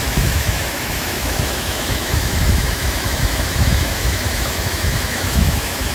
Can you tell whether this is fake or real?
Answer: fake